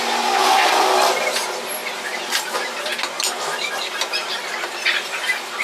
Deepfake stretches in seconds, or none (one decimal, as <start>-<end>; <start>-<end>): none